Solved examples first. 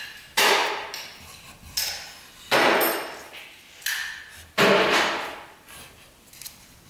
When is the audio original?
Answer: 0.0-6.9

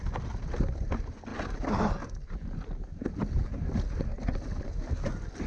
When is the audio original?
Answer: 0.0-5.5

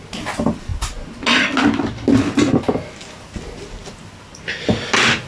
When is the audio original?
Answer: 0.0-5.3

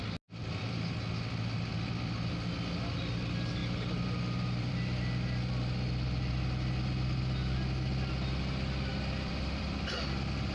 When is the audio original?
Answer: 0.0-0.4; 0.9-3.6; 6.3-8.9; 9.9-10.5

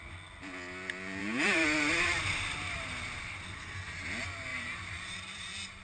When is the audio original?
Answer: 0.0-1.2; 2.9-4.5

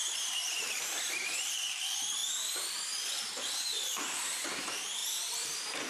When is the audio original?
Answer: 2.2-3.8

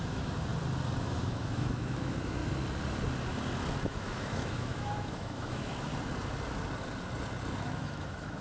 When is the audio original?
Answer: 0.5-1.0; 2.4-3.8; 5.9-7.6

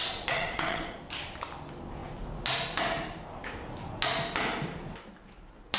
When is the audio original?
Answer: 1.0-5.8